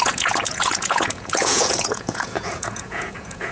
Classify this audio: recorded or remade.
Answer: remade